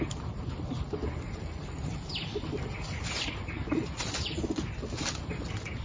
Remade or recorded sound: remade